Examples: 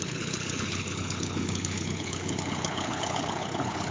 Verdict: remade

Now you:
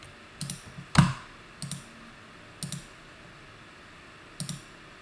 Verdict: recorded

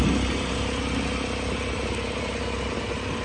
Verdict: recorded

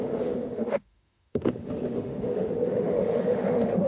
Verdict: remade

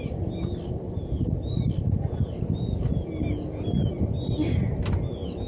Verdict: recorded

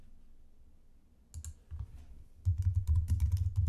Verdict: recorded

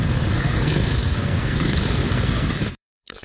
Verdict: remade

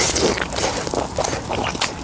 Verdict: recorded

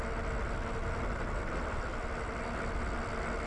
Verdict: recorded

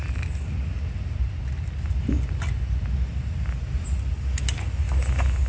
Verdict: recorded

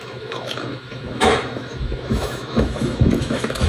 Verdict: remade